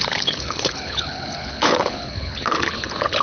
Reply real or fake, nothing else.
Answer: fake